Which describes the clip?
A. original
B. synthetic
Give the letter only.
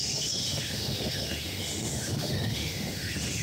B